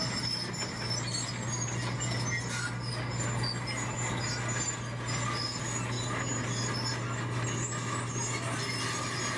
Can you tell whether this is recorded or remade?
recorded